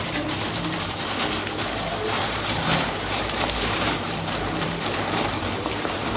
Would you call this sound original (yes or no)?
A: no